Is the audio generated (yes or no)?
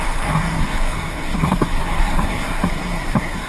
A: yes